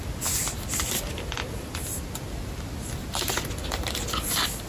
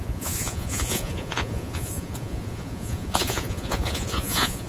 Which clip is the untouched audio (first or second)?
first